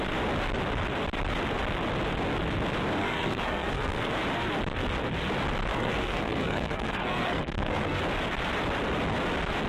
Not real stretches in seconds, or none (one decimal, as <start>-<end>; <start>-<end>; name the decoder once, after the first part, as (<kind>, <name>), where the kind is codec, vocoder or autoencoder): 3.0-4.1 (codec, SNAC); 5.7-8.0